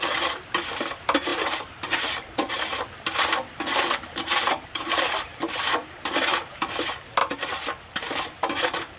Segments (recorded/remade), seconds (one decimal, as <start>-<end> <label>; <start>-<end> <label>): 0.0-7.2 remade; 7.2-8.0 recorded; 8.0-9.0 remade